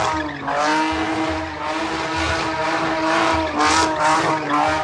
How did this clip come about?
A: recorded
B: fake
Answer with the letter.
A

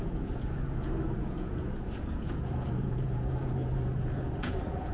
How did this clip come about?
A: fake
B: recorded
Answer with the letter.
A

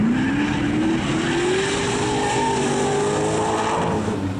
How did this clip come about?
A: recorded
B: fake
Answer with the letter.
A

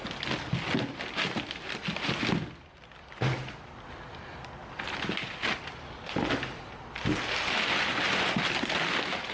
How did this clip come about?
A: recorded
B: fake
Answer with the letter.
A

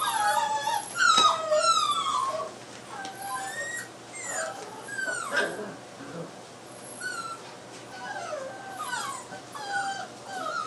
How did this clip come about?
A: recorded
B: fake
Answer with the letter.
A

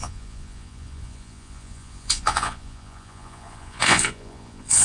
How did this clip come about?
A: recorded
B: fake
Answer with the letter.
B